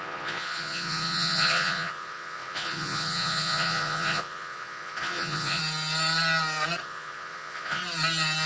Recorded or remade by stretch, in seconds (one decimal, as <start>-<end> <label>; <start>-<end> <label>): 0.0-5.6 remade; 5.6-6.8 recorded; 6.8-7.8 remade; 7.8-8.5 recorded